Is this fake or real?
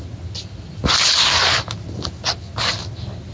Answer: real